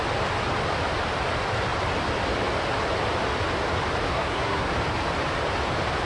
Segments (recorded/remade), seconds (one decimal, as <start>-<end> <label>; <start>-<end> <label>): 0.0-4.1 recorded; 4.1-4.7 remade; 4.7-6.1 recorded